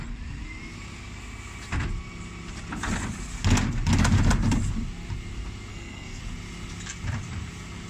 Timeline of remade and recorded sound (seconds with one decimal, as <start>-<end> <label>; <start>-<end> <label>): 0.0-5.7 recorded; 5.7-6.2 remade; 6.2-7.9 recorded